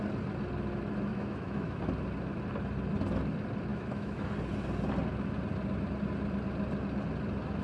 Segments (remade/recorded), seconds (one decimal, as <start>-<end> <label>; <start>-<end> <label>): 0.0-1.1 recorded; 1.1-1.8 remade; 1.8-3.7 recorded; 3.7-4.3 remade; 4.3-7.6 recorded